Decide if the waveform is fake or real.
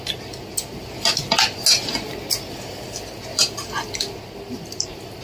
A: real